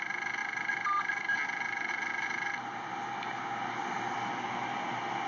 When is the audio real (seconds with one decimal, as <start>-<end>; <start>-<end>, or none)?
0.0-5.3